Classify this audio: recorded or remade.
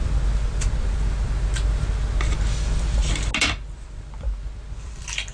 recorded